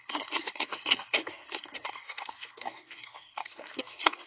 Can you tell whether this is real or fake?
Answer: fake